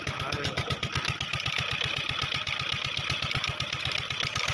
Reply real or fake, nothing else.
real